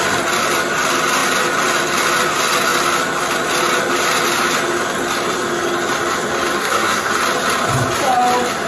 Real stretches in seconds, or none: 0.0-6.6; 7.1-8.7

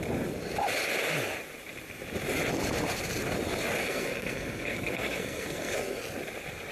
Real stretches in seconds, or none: 0.0-3.8; 6.0-6.7